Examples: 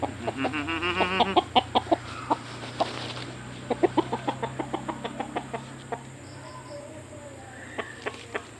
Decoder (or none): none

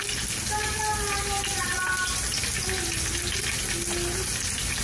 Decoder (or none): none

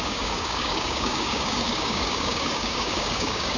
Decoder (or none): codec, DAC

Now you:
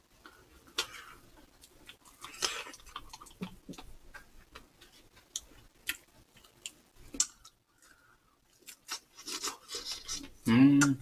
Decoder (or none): none